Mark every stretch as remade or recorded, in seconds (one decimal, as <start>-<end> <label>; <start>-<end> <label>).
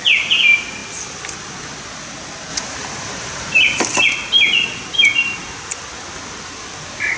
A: 0.0-2.5 recorded; 2.5-3.8 remade; 3.8-7.2 recorded